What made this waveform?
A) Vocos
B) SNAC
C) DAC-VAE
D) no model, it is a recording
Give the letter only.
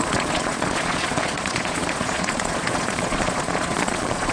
A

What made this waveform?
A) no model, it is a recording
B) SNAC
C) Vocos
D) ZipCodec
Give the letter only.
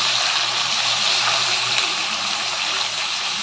A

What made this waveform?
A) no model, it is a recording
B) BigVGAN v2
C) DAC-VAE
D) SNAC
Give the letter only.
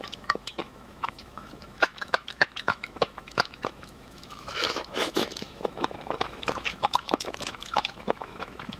C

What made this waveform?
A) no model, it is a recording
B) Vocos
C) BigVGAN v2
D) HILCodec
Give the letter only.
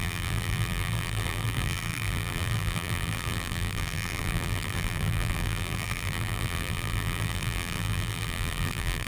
C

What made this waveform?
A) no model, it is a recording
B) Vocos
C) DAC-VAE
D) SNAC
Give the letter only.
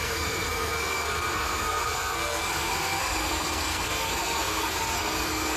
D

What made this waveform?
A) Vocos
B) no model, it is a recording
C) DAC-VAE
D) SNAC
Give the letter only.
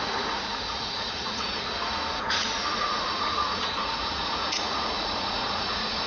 A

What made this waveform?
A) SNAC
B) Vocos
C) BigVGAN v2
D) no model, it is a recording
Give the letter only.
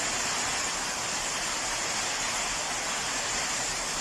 D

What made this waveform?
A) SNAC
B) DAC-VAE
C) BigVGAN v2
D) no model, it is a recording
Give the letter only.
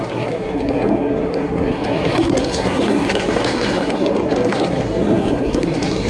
A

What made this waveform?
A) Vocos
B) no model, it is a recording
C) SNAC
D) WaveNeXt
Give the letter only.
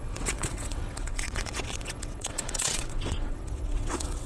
D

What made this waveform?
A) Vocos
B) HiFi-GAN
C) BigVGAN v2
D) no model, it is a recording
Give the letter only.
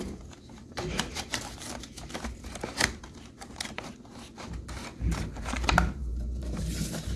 C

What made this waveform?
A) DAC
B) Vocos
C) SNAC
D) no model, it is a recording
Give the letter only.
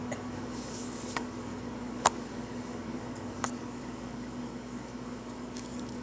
A